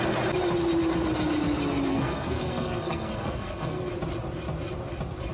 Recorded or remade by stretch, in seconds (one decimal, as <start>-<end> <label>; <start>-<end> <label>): 0.0-1.9 recorded; 1.9-3.9 remade; 3.9-5.3 recorded

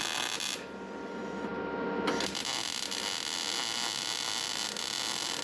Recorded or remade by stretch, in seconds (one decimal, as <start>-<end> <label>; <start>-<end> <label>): 0.0-5.4 recorded